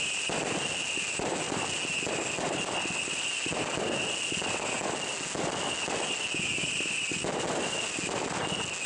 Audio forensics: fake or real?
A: real